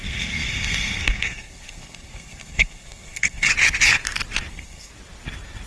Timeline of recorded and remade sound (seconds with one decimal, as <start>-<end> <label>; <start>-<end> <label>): 0.0-3.5 remade; 3.5-4.5 recorded; 4.5-4.9 remade; 4.9-5.7 recorded